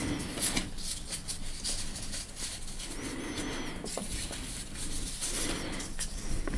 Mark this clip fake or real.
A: real